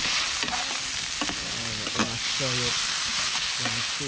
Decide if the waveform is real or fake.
real